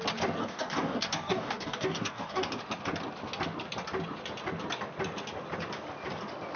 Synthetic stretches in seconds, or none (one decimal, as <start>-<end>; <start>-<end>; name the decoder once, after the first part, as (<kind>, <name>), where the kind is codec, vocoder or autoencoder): 0.4-2.5 (codec, DAC)